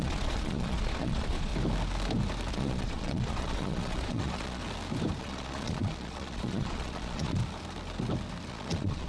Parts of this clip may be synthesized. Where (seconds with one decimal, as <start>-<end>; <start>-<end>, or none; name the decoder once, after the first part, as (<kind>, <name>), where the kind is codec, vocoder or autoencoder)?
0.0-1.5 (vocoder, Vocos); 2.5-4.6; 5.2-7.4; 8.5-9.1